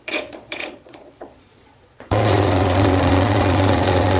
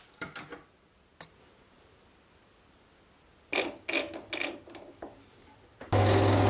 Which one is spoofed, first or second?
first